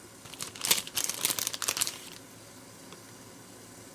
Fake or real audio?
real